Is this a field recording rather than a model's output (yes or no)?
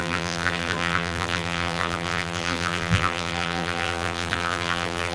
no